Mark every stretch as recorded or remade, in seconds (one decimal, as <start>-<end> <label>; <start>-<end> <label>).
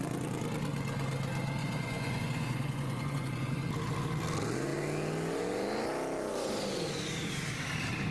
0.0-1.6 recorded; 1.6-3.6 remade; 3.6-8.1 recorded